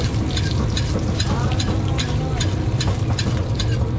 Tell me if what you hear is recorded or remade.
recorded